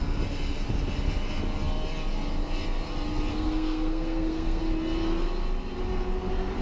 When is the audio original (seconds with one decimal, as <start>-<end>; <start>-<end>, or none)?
0.0-3.3; 4.6-6.6